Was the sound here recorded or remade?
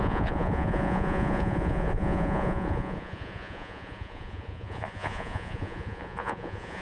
remade